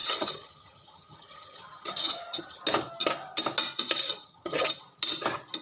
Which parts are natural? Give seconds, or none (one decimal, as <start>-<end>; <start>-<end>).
2.6-4.2; 4.7-5.6